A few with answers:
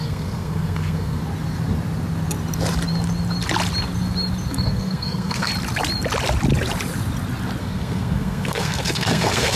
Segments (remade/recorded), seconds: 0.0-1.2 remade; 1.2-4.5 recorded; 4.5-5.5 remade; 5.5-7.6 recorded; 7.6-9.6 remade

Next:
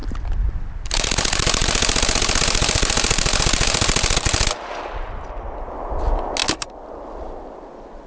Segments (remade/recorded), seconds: 0.0-8.1 recorded

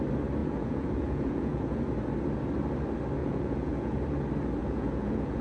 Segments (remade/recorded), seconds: 0.0-0.4 recorded; 0.4-1.8 remade; 1.8-3.2 recorded; 3.2-4.0 remade; 4.0-4.6 recorded; 4.6-5.4 remade

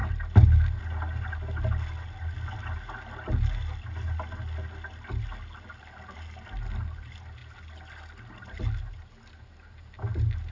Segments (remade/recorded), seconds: 0.0-10.5 recorded

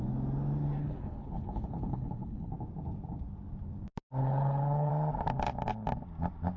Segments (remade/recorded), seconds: 0.0-0.8 recorded; 0.8-2.5 remade; 2.5-4.2 recorded; 4.2-4.9 remade; 4.9-6.6 recorded

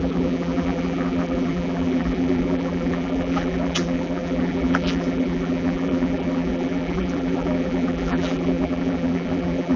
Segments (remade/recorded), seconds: 0.0-9.8 remade

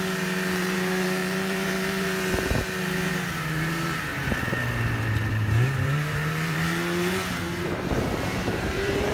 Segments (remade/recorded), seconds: 0.0-4.1 remade; 4.1-5.3 recorded; 5.3-9.1 remade

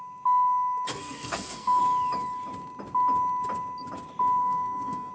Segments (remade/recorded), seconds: 0.0-1.0 recorded; 1.0-1.8 remade; 1.8-4.4 recorded; 4.4-5.1 remade